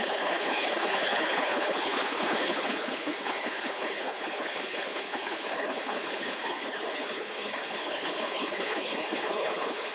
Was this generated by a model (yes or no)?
yes